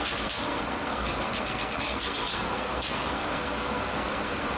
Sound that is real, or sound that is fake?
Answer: fake